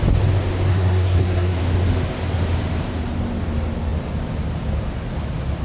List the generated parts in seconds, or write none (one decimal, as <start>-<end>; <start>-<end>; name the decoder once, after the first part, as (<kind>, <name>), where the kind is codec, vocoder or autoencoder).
0.7-1.6 (codec, SNAC)